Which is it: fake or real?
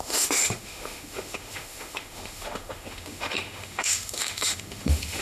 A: fake